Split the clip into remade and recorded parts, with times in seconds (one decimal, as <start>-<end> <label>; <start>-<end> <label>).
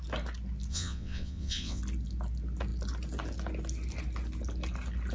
0.0-0.7 recorded; 0.7-1.8 remade; 1.8-5.1 recorded